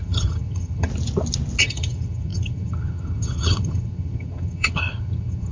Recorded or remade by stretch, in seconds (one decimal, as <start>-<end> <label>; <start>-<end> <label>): 0.0-0.9 remade; 0.9-1.6 recorded; 1.6-5.5 remade